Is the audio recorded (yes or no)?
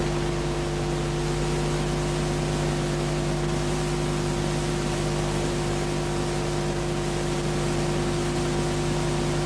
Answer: yes